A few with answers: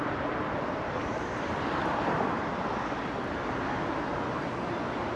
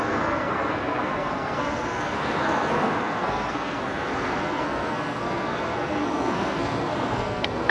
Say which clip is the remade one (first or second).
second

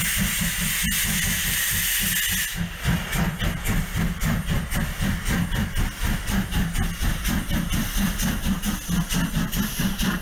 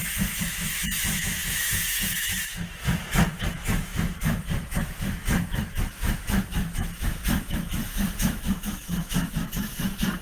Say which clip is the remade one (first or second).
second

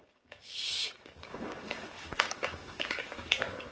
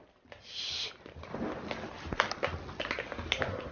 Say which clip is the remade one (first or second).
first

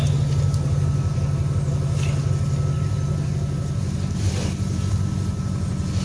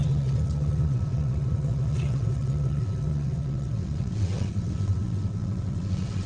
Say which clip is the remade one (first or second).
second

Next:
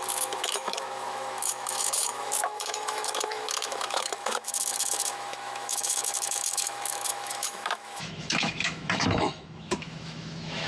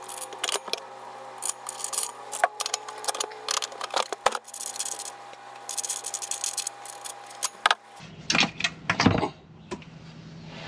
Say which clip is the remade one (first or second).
first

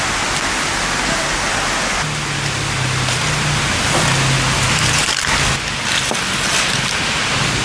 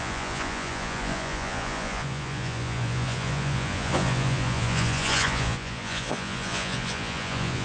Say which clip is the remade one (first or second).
second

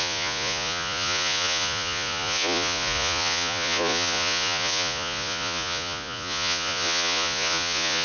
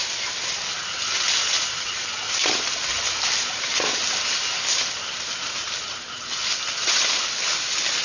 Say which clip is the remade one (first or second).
first